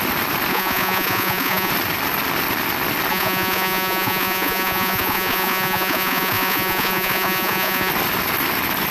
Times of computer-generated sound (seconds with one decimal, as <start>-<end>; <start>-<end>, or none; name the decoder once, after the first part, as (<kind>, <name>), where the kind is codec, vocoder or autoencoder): 0.5-1.7 (vocoder, Vocos); 3.1-7.9